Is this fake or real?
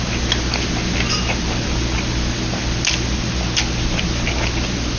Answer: real